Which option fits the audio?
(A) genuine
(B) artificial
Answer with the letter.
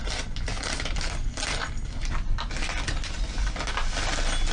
A